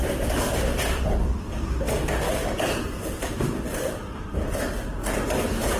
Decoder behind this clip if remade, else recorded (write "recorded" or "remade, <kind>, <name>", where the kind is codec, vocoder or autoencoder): recorded